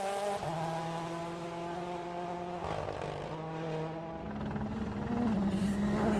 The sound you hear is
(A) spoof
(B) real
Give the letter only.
B